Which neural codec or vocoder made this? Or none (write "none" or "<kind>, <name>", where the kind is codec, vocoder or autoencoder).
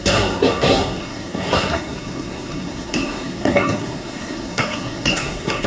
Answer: codec, SNAC